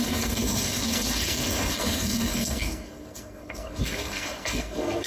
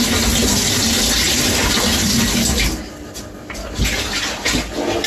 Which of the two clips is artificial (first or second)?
first